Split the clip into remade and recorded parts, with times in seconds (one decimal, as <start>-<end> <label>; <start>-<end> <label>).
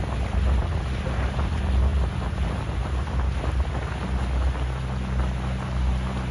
0.0-6.3 recorded